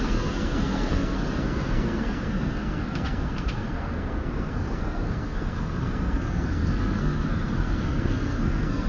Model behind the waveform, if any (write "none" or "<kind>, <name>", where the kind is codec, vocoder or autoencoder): codec, SNAC